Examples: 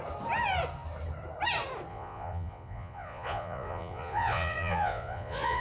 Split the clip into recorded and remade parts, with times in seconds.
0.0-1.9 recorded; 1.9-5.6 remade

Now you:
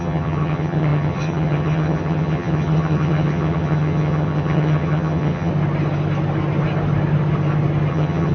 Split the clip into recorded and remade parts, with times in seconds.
0.0-5.5 remade; 5.5-7.9 recorded; 7.9-8.3 remade

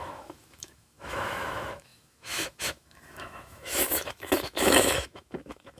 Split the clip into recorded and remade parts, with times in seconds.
0.0-5.8 remade

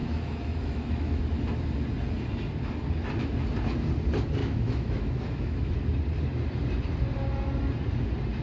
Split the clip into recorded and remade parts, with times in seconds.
0.0-1.2 remade; 1.2-4.4 recorded; 4.4-5.7 remade; 5.7-8.4 recorded

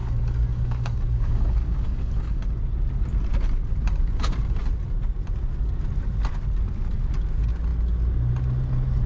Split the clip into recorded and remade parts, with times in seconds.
0.0-2.4 remade; 2.4-9.1 recorded